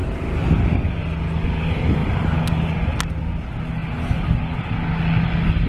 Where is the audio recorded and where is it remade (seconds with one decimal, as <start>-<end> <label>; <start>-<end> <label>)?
0.0-0.6 remade; 0.6-5.7 recorded